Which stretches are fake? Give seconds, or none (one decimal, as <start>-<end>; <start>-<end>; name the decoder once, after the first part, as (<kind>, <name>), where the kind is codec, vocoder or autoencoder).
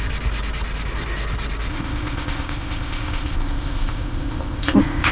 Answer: 1.7-5.1 (codec, ZipCodec)